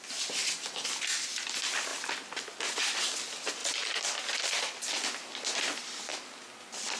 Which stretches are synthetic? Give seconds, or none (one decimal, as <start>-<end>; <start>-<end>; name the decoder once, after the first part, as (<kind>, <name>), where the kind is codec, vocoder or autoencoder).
none